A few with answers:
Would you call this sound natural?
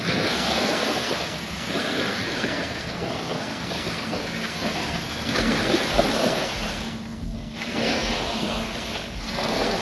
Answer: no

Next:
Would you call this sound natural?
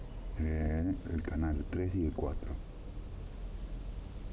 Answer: yes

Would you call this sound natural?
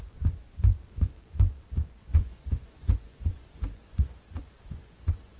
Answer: no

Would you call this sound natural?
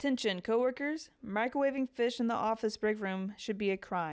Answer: yes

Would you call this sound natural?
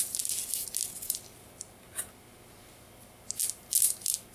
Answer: yes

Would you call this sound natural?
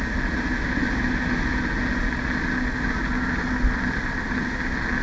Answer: yes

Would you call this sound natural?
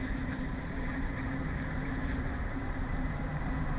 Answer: no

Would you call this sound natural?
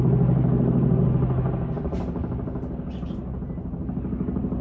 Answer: yes